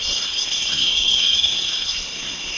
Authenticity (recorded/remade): remade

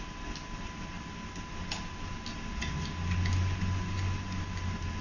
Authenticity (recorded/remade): recorded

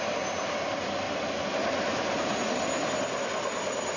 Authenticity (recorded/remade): recorded